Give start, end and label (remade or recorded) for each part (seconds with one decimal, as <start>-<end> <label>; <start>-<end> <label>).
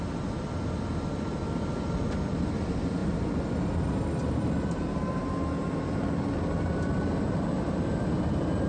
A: 0.0-8.7 recorded